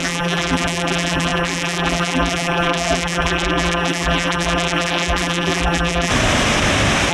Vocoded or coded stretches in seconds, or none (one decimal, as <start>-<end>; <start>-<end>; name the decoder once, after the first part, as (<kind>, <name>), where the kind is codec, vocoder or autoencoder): 0.0-6.1 (vocoder, BigVGAN v2)